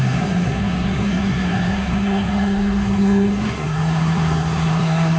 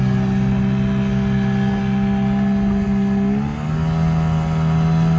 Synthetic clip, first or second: first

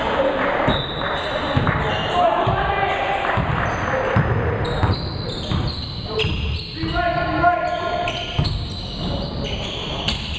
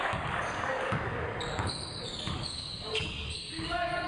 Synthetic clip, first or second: second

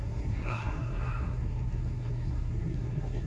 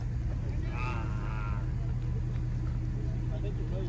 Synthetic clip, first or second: first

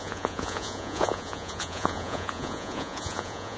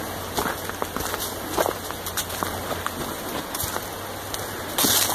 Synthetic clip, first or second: first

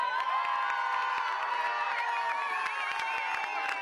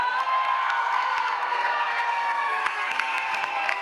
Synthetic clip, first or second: second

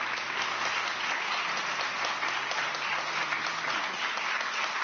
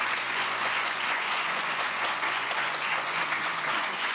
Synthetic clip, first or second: second